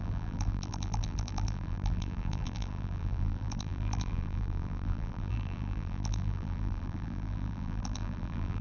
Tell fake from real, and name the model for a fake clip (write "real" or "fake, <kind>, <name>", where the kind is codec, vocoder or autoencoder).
fake, vocoder, BigVGAN v2